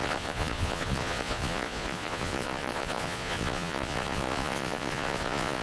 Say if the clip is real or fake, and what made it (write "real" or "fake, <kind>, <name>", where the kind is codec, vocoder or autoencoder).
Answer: fake, vocoder, Vocos